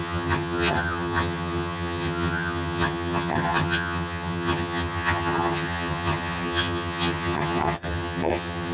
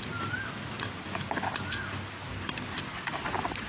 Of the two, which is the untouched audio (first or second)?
second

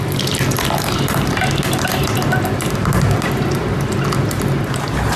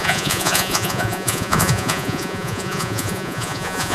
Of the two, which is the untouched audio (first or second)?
first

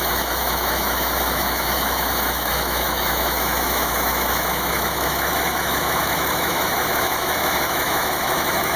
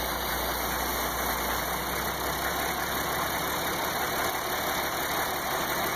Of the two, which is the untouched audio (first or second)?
second